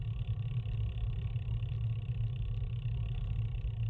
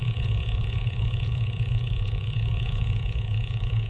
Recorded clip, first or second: first